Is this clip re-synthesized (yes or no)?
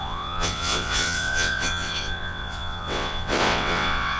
yes